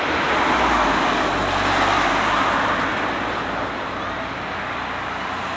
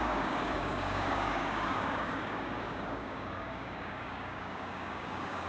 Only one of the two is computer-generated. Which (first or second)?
second